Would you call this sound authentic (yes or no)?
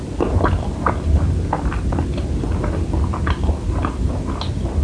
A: yes